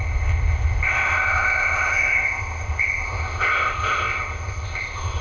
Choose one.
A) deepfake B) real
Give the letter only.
A